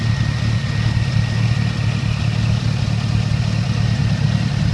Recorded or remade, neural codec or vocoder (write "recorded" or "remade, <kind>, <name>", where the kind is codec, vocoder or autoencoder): recorded